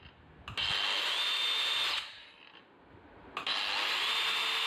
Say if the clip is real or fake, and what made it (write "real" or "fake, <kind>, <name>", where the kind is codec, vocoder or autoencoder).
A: real